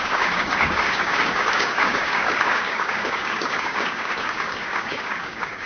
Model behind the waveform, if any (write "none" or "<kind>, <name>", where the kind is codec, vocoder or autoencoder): codec, DAC